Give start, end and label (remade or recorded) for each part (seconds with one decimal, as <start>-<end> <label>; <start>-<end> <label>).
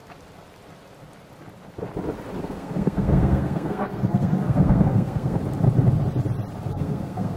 0.0-2.4 recorded; 2.4-5.4 remade; 5.4-6.7 recorded; 6.7-7.4 remade